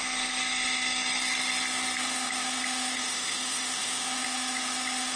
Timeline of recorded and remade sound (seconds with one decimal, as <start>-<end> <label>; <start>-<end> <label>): 0.0-2.0 recorded; 2.0-5.2 remade